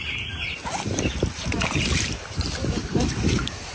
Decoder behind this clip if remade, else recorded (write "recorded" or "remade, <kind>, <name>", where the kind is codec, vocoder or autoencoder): remade, vocoder, BigVGAN v2